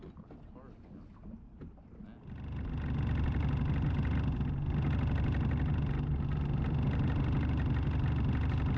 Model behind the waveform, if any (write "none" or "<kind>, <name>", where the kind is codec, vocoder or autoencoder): none